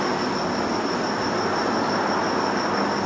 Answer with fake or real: real